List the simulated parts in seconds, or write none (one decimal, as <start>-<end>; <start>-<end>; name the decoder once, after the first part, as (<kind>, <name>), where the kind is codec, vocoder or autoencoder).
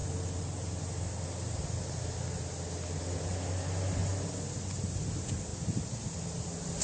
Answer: 0.0-1.3 (vocoder, BigVGAN v2)